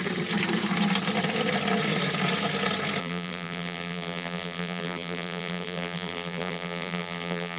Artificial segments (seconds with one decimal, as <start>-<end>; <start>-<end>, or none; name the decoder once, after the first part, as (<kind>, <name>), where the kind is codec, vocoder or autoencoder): 3.0-7.6 (vocoder, BigVGAN v2)